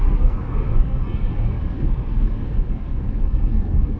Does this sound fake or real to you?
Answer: fake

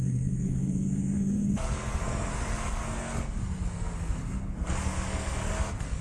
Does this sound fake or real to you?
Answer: fake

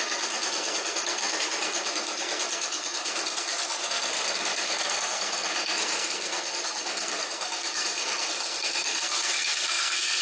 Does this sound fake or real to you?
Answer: fake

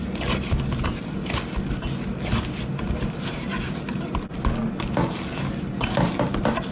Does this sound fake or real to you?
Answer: real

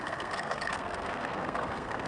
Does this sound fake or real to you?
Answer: fake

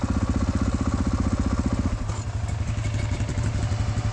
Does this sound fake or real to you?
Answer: real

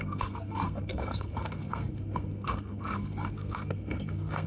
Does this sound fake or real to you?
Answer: fake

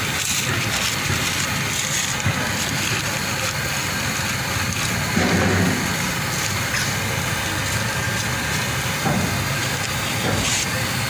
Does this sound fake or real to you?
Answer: real